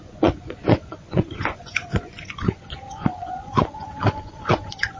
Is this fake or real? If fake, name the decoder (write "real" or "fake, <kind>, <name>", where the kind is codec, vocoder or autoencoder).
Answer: fake, vocoder, Vocos